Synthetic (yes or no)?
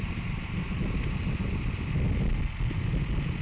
no